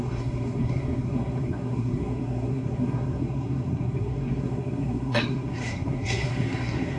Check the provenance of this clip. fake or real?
fake